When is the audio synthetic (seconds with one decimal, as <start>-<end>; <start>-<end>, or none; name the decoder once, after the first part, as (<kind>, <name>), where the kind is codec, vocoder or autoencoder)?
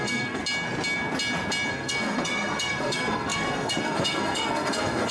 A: 0.0-0.4 (codec, SNAC); 1.7-5.1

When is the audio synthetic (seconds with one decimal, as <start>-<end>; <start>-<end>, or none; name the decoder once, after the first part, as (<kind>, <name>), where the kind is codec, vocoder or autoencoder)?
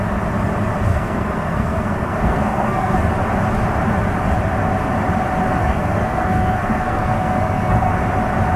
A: 0.9-3.1 (codec, SNAC); 5.6-7.9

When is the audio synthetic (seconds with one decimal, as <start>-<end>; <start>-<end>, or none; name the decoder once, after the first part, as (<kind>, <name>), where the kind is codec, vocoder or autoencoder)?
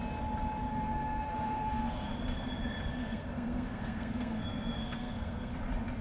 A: 0.7-2.1 (codec, SNAC); 3.0-5.6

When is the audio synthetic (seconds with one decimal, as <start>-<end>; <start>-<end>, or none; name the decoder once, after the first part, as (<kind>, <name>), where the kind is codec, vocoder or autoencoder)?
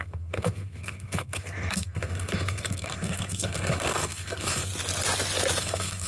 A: 0.0-4.7 (codec, SNAC); 5.6-6.1